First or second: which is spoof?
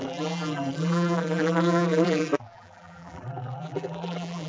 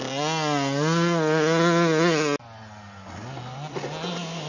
first